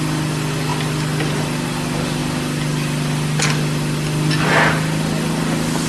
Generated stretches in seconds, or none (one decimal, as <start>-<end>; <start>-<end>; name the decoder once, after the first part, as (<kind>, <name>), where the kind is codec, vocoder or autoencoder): none

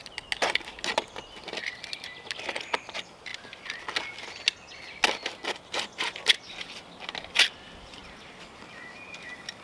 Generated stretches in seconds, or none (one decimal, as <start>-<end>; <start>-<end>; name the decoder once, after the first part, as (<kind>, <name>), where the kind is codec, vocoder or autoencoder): none